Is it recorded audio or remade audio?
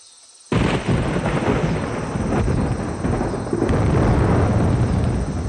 recorded